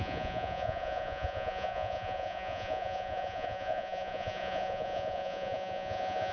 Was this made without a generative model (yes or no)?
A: no